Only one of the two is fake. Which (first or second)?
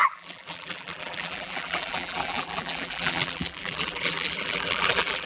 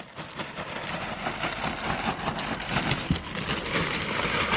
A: first